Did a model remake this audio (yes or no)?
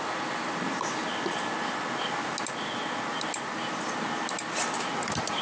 no